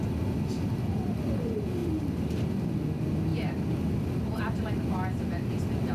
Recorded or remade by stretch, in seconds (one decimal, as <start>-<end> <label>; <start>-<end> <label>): 0.0-5.9 recorded